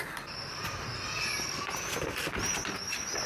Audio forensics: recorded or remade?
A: recorded